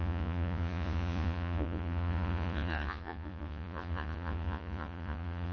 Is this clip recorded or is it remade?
remade